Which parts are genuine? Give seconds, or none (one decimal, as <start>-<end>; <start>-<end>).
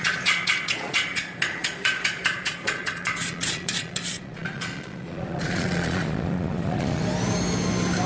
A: 7.0-8.1